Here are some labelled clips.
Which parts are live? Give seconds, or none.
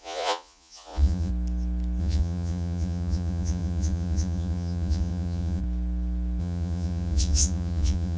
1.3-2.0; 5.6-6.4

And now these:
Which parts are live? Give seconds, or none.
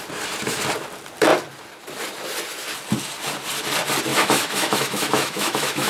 0.0-4.1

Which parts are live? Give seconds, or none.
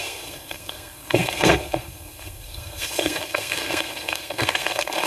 none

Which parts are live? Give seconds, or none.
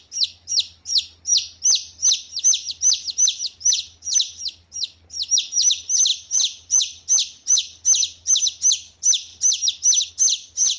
0.0-10.8